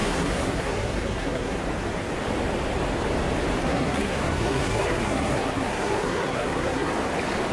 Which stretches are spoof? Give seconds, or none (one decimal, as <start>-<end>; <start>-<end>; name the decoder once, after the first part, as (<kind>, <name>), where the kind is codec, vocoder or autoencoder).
0.0-1.6 (codec, SNAC); 3.6-6.9